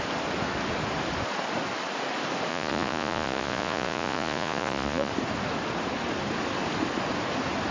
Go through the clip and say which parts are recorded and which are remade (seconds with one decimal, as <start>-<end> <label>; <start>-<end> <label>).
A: 0.0-2.5 recorded; 2.5-5.1 remade; 5.1-7.7 recorded